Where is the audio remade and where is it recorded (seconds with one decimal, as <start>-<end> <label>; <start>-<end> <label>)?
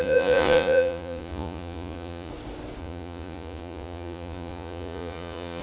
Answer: 0.0-2.3 remade; 2.3-2.8 recorded; 2.8-5.6 remade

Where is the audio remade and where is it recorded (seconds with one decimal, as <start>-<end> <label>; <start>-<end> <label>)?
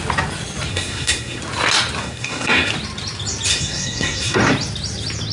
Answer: 0.0-0.7 recorded; 0.7-1.4 remade; 1.4-2.0 recorded; 2.0-2.7 remade; 2.7-3.5 recorded; 3.5-4.4 remade; 4.4-5.3 recorded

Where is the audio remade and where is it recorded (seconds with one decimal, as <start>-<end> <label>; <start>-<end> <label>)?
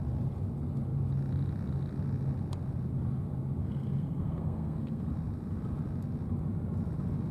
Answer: 0.0-3.6 recorded; 3.6-5.1 remade; 5.1-7.3 recorded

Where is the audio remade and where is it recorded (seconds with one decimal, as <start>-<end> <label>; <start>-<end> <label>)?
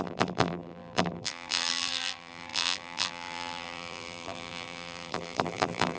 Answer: 0.0-6.0 remade